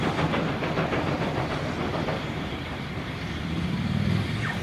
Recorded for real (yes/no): no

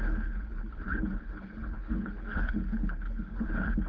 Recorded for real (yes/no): no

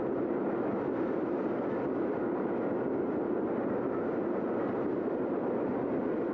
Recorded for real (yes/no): yes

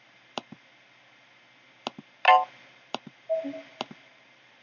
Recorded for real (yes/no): yes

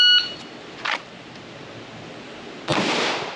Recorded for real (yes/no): yes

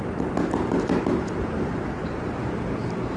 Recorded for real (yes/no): yes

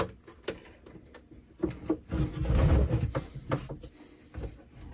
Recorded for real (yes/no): yes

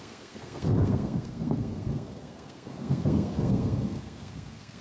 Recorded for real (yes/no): no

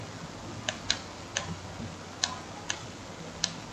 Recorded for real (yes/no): yes